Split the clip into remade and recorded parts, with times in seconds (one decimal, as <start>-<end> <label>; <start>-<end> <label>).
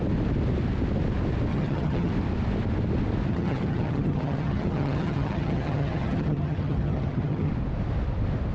0.0-1.5 recorded; 1.5-2.1 remade; 2.1-3.3 recorded; 3.3-7.5 remade; 7.5-8.5 recorded